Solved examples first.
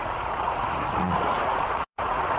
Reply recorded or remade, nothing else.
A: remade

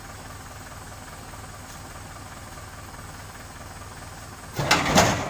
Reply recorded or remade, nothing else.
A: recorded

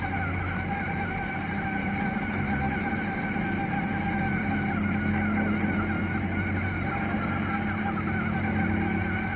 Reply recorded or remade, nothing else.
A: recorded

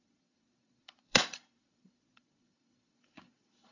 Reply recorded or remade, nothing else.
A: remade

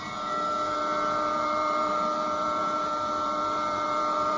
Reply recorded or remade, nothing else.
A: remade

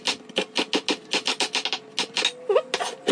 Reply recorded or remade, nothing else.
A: recorded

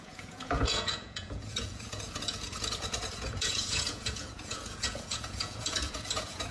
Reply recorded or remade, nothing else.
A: remade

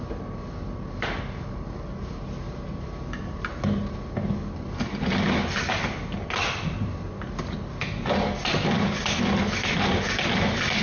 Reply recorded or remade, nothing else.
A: recorded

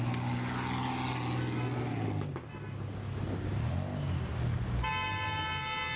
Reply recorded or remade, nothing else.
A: recorded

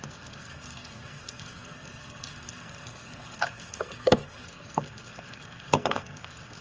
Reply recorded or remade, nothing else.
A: remade